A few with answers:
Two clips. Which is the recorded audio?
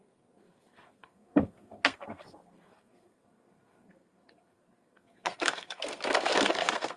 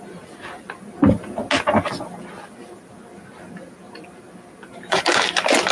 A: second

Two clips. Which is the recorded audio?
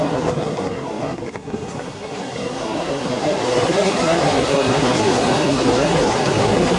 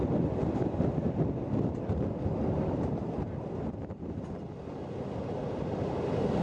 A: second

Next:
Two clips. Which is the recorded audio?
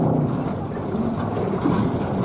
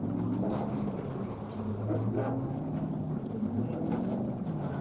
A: second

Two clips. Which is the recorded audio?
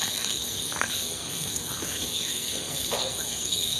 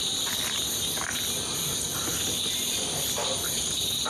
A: second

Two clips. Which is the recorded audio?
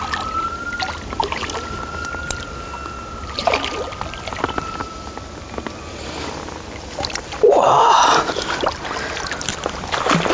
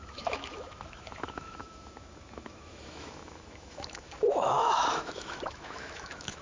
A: first